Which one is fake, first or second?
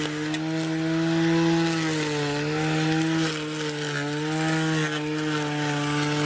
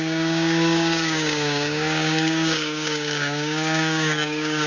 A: second